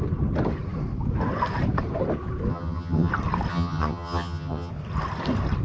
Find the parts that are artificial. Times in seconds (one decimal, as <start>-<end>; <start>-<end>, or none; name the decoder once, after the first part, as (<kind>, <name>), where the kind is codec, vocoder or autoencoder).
2.5-3.1 (vocoder, HiFi-GAN); 3.5-4.7